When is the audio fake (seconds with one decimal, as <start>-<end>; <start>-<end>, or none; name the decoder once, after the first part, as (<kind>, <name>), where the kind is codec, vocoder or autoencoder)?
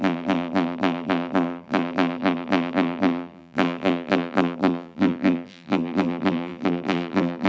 0.0-7.5 (vocoder, BigVGAN v2)